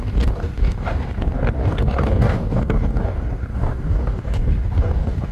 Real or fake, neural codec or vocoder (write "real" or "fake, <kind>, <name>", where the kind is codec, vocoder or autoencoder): fake, codec, DAC